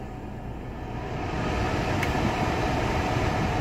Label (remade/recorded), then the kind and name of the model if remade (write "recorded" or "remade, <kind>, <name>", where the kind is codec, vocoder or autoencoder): recorded